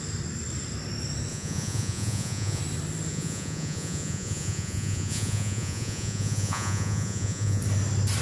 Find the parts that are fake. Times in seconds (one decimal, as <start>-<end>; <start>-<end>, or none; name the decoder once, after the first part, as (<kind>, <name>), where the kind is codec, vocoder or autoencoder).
1.3-2.6 (vocoder, Vocos); 3.1-7.6